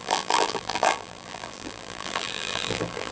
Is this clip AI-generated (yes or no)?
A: yes